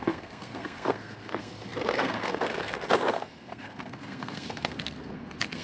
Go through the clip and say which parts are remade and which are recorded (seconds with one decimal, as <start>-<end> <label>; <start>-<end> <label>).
0.0-5.6 remade